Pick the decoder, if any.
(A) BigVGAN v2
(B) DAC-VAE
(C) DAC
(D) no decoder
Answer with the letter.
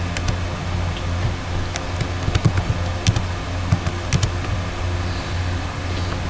D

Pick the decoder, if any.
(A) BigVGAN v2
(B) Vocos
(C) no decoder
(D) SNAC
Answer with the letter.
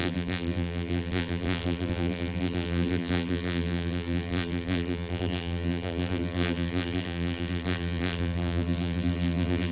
A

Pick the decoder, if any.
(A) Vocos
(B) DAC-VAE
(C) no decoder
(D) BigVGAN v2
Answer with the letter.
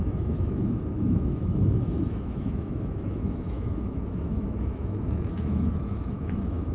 B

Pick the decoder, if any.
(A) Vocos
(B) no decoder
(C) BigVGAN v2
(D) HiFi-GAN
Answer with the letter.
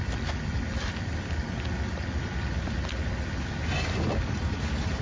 B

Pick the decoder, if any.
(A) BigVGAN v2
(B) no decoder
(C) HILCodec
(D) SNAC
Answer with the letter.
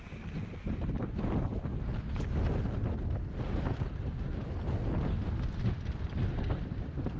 B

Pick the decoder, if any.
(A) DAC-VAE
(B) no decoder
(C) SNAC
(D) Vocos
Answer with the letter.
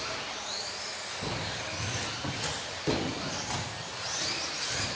B